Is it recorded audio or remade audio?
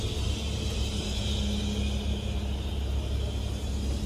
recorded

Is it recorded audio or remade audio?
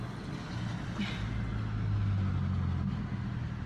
recorded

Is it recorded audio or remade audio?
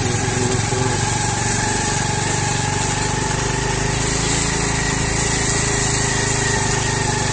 recorded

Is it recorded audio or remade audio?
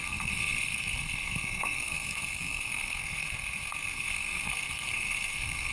remade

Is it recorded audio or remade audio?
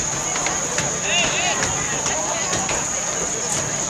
recorded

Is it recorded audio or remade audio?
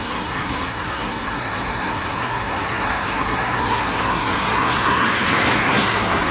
remade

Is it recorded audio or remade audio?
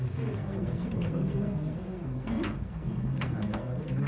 remade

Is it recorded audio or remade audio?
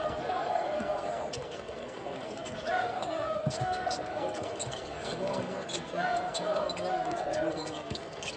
remade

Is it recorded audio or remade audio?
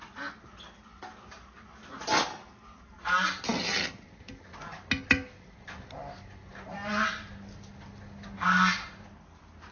recorded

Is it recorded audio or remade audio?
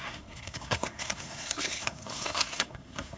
remade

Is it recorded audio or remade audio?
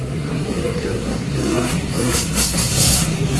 remade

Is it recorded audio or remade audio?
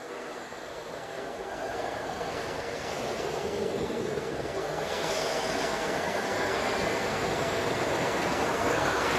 remade